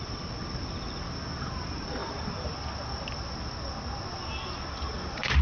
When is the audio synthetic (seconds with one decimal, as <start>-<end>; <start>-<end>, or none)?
none